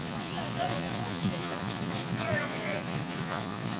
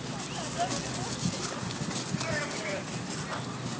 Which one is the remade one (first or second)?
first